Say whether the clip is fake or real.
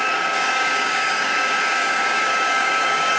fake